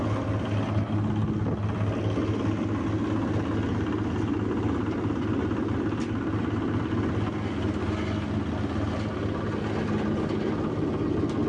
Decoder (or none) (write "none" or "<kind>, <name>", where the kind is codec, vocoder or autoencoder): none